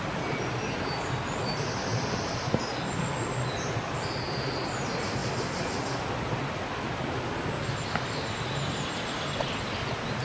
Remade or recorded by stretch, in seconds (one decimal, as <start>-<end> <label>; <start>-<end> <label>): 0.0-10.2 recorded

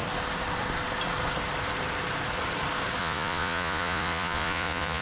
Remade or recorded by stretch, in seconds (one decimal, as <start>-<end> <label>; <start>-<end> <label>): 0.0-3.0 recorded; 3.0-5.0 remade